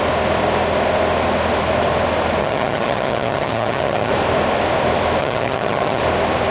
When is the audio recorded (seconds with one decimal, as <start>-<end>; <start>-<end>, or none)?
0.0-2.4; 4.1-5.2; 6.0-6.5